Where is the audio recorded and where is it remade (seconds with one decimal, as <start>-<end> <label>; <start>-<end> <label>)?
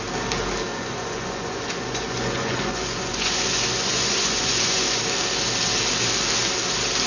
0.0-0.7 recorded; 0.7-5.0 remade; 5.0-7.1 recorded